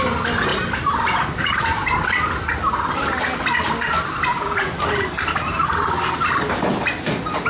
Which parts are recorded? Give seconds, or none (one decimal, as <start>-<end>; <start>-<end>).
0.0-0.5; 1.6-4.3; 5.7-7.5